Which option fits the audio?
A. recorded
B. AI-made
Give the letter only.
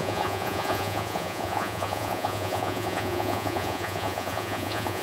B